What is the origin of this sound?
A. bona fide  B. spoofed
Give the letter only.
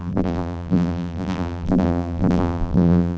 B